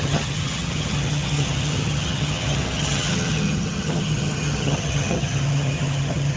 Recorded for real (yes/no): no